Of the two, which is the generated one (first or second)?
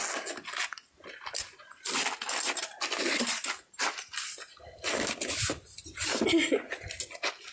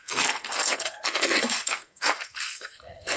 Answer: second